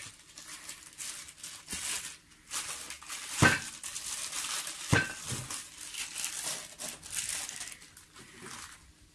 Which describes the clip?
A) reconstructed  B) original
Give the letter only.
B